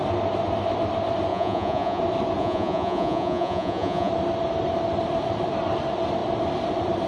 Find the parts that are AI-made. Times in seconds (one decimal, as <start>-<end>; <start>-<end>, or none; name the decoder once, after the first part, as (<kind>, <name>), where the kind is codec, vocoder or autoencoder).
1.3-2.0 (vocoder, Vocos); 2.4-4.1

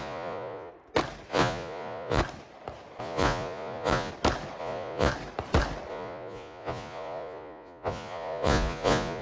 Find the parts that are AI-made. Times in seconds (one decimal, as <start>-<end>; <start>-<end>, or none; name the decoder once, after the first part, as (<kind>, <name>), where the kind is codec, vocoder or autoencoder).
0.0-0.7 (vocoder, Vocos); 1.3-2.2; 3.0-4.1; 4.6-5.1; 5.9-9.2

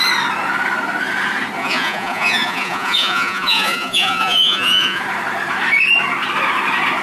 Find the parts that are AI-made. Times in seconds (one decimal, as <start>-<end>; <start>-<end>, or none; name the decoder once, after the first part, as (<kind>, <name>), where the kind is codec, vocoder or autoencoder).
1.6-5.0 (vocoder, Vocos)

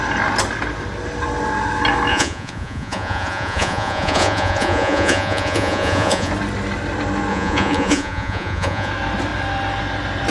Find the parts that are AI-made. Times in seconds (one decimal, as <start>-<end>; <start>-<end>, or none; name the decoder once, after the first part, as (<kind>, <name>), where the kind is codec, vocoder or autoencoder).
2.1-6.3 (vocoder, Vocos); 7.3-8.9

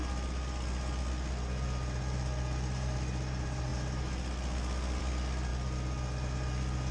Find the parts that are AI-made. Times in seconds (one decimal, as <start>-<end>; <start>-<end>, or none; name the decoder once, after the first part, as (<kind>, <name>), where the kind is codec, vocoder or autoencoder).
none

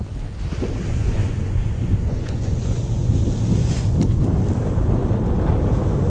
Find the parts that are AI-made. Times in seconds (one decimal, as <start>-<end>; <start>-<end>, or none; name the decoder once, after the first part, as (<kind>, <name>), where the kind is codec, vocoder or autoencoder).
0.9-3.1 (vocoder, Vocos); 3.6-4.2

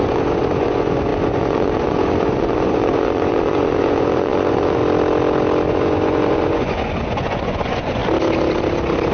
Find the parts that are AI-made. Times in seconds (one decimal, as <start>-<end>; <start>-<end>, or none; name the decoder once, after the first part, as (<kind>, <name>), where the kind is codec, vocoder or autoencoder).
0.0-4.8 (vocoder, Vocos); 5.7-8.0